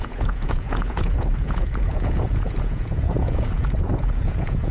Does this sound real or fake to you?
fake